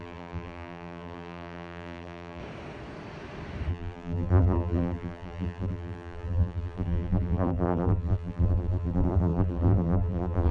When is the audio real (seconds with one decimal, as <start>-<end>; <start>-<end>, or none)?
2.4-3.7